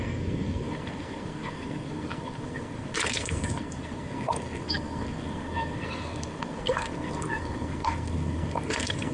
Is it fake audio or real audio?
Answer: fake